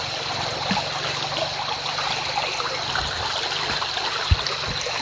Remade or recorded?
recorded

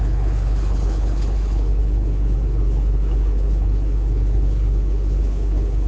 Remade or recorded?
remade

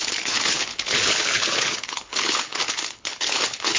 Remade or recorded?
remade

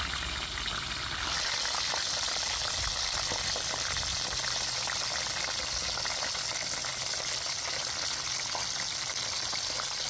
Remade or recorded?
recorded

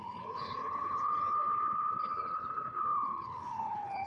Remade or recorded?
remade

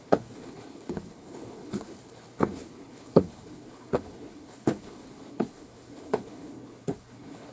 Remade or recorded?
remade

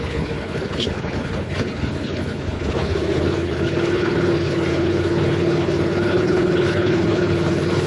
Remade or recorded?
remade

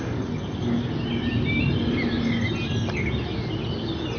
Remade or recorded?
recorded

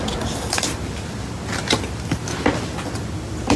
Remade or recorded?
recorded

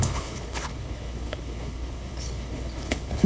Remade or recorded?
remade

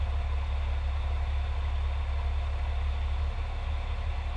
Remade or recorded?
recorded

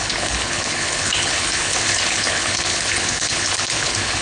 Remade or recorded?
remade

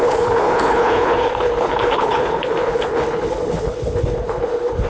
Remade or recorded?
remade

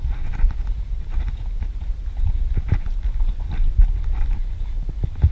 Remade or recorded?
recorded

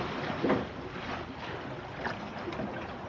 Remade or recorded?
recorded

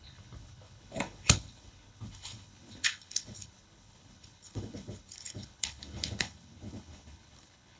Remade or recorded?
remade